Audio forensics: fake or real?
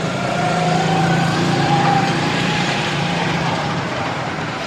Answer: fake